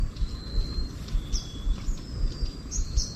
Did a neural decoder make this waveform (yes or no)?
no